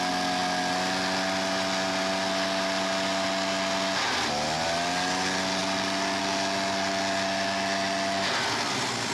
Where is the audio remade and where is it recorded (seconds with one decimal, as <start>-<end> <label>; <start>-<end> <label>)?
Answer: 0.0-9.1 recorded